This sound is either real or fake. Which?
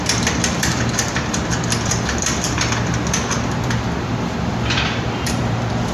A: fake